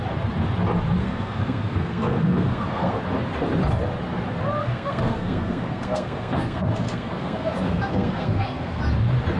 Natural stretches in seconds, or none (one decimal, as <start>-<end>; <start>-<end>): 0.0-1.0; 3.0-4.6; 8.8-9.4